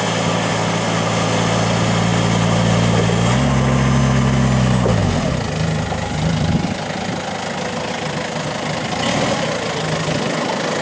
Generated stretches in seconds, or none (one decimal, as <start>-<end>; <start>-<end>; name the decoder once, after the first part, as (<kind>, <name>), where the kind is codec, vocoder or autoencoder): none